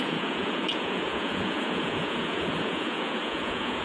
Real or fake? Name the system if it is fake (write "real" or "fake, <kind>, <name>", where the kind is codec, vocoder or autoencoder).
fake, vocoder, Vocos